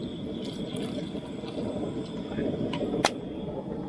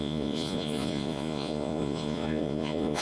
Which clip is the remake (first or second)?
second